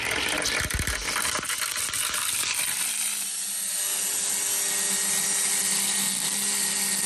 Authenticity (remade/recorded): recorded